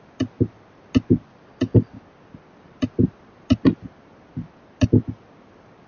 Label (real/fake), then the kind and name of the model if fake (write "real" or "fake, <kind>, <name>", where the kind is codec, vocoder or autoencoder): real